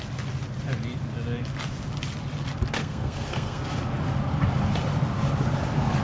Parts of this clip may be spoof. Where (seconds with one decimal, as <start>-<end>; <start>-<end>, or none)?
2.8-3.6